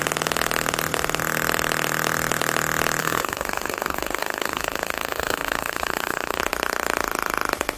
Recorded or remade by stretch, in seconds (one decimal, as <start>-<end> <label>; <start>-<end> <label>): 0.0-3.0 recorded; 3.0-6.4 remade; 6.4-7.8 recorded